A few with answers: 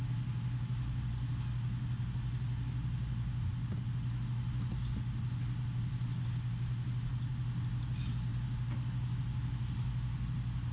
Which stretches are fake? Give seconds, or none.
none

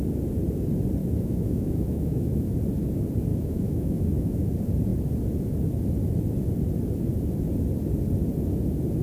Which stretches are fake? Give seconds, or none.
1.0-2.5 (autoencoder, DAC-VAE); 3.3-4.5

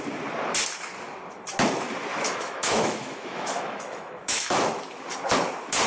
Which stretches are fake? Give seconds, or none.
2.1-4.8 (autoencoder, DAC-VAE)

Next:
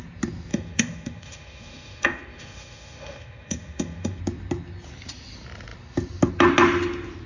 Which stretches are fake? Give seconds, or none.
0.5-4.2 (autoencoder, DAC-VAE)

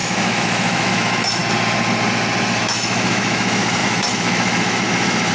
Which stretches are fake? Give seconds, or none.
0.0-1.4 (autoencoder, DAC-VAE); 2.6-5.3

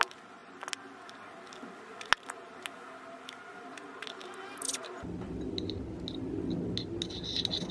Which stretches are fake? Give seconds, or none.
none

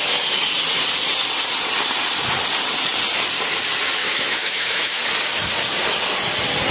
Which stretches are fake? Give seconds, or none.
4.0-5.0 (autoencoder, DAC-VAE)

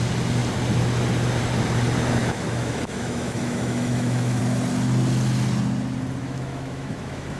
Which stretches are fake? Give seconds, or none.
2.2-4.4 (autoencoder, DAC-VAE); 6.2-7.4